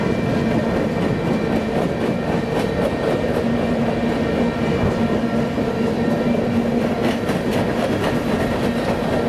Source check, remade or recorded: recorded